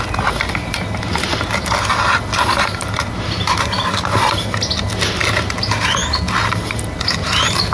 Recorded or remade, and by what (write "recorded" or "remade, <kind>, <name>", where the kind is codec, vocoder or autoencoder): recorded